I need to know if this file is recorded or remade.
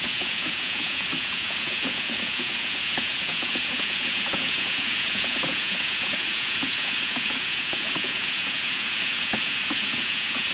remade